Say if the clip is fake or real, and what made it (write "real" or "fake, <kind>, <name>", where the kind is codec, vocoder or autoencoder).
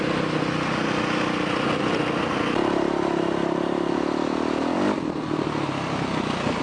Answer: real